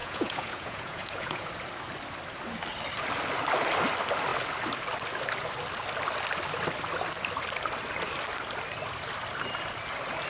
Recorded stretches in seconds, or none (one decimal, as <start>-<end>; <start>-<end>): 1.5-10.3